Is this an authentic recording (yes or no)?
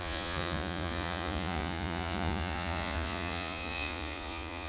no